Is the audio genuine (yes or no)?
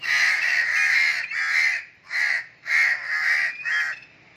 yes